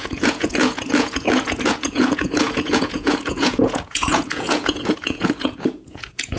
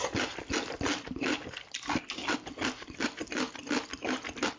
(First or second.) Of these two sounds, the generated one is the first